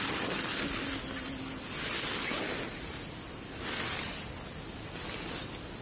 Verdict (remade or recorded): recorded